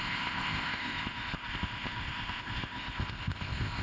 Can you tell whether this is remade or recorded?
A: remade